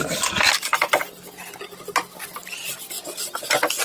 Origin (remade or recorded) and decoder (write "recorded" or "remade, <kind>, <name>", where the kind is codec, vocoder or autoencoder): recorded